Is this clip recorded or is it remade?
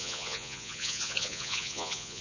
remade